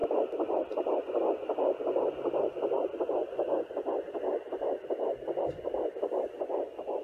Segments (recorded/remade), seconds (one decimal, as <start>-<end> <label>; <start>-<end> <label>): 0.0-1.2 recorded; 1.2-3.2 remade; 3.2-5.4 recorded; 5.4-7.0 remade